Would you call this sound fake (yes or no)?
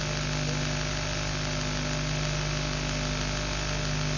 no